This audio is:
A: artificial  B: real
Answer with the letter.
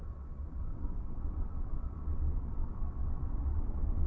A